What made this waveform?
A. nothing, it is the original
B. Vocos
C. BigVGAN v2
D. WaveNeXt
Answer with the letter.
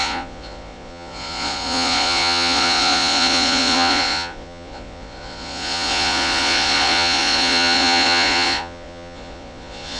B